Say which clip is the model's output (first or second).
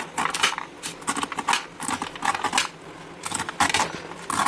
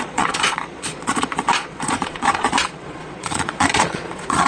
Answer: second